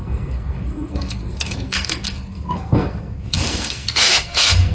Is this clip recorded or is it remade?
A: remade